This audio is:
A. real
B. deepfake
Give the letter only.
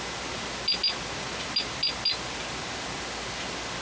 A